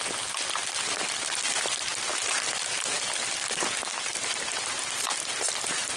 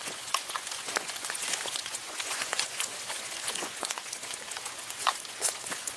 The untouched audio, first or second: first